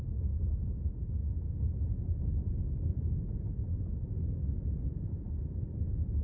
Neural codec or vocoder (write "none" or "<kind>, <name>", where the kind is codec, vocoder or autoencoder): none